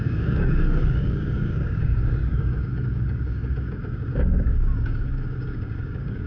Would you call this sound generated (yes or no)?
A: yes